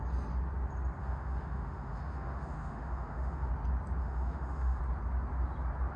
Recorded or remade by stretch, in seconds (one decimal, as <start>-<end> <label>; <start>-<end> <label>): 0.0-1.0 recorded; 1.0-3.5 remade; 3.5-4.0 recorded; 4.0-4.8 remade; 4.8-6.0 recorded